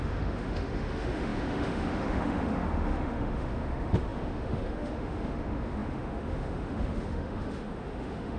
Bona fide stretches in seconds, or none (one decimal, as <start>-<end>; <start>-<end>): none